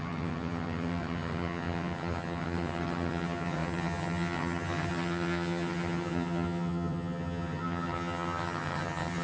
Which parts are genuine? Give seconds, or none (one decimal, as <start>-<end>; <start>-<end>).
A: none